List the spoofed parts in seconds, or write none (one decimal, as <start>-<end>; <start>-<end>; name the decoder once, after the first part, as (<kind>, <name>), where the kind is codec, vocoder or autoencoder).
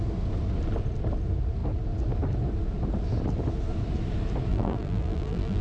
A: 4.5-5.6 (vocoder, BigVGAN v2)